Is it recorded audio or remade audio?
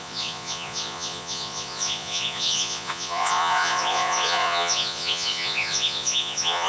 remade